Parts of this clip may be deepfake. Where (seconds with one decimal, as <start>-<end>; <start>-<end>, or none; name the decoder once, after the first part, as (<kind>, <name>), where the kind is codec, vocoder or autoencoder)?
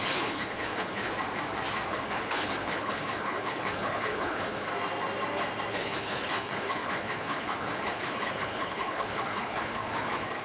0.0-1.1 (codec, HILCodec); 1.9-4.7; 5.7-10.4